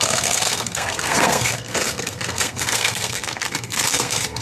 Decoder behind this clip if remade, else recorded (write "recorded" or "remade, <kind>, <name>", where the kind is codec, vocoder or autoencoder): remade, codec, SNAC